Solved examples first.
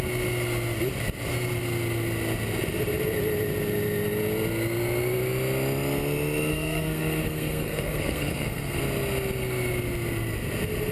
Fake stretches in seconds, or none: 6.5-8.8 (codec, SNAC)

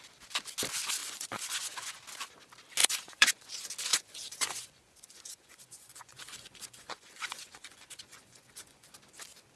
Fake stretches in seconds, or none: 1.0-2.0 (vocoder, Vocos); 2.8-3.5; 3.9-8.9

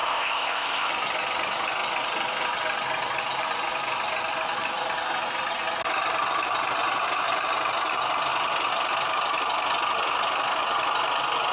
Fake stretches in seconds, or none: 0.0-0.9 (codec, ZipCodec)

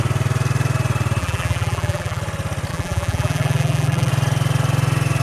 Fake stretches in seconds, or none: 1.2-2.2 (vocoder, BigVGAN v2); 2.7-4.1

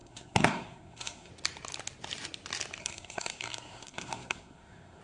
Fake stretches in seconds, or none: 0.0-1.3 (codec, SNAC); 2.8-5.0